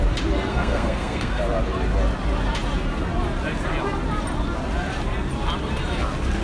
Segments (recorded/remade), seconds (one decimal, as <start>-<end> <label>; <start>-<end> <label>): 0.0-0.5 recorded; 0.5-1.4 remade; 1.4-6.4 recorded